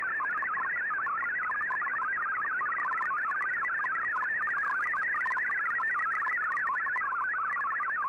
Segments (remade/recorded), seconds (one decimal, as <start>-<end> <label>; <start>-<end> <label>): 0.0-6.6 recorded; 6.6-7.2 remade; 7.2-8.1 recorded